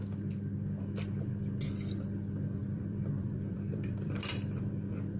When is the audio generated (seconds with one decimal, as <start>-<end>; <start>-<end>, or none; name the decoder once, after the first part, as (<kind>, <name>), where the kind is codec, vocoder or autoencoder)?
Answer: 2.6-4.7 (vocoder, BigVGAN v2)

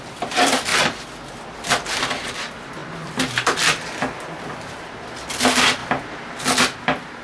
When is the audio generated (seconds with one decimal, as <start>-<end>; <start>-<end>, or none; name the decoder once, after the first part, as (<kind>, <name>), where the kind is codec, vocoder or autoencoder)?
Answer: 0.0-5.8 (vocoder, BigVGAN v2); 6.6-7.2

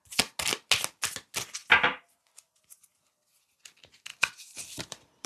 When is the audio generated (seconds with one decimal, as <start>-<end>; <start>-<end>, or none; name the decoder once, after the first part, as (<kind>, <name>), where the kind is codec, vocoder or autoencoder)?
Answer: 4.1-5.3 (vocoder, BigVGAN v2)

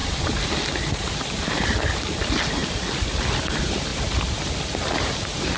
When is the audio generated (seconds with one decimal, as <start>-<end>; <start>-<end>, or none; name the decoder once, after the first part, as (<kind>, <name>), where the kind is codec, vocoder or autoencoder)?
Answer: 1.2-3.9 (vocoder, BigVGAN v2)

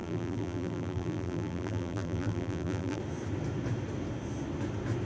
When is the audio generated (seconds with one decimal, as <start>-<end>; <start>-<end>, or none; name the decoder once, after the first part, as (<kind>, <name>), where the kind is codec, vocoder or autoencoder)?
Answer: 0.0-3.0 (vocoder, BigVGAN v2)

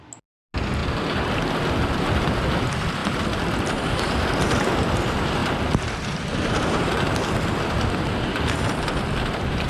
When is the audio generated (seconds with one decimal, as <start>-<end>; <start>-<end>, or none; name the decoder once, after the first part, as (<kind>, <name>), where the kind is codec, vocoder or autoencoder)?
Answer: 0.8-1.3 (vocoder, BigVGAN v2); 3.0-4.7; 5.4-7.1

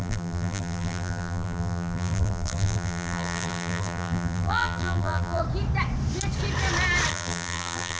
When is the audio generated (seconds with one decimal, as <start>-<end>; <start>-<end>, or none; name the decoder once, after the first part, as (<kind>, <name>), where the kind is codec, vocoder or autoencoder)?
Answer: 0.0-5.4 (vocoder, BigVGAN v2); 7.1-8.0